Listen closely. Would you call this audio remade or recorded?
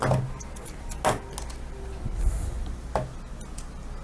recorded